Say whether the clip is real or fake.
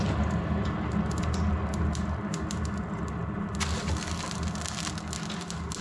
real